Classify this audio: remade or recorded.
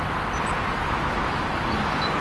recorded